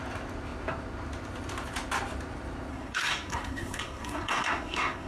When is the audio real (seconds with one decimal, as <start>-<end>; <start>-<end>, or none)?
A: 0.0-2.7